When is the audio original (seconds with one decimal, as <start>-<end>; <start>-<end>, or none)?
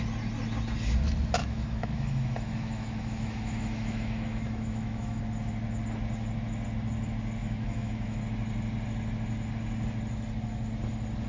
0.0-1.4; 5.2-7.4; 8.2-11.3